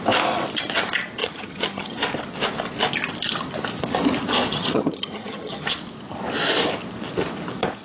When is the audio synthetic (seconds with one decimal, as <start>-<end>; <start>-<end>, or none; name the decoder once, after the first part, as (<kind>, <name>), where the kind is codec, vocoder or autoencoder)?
1.2-2.0 (vocoder, HiFi-GAN); 4.5-5.7